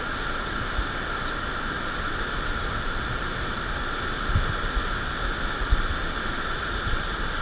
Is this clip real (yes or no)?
yes